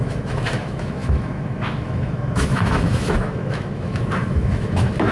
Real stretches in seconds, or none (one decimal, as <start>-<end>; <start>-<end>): none